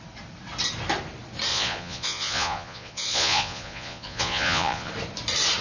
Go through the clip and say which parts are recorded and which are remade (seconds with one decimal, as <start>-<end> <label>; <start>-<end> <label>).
0.0-1.5 recorded; 1.5-4.9 remade; 4.9-5.6 recorded